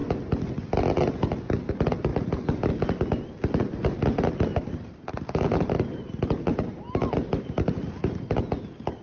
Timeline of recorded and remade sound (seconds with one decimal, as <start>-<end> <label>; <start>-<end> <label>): 0.0-2.1 recorded; 2.1-2.7 remade; 2.7-4.5 recorded; 4.5-8.5 remade; 8.5-9.0 recorded